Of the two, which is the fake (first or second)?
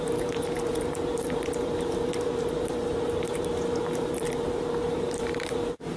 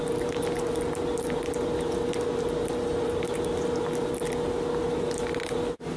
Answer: first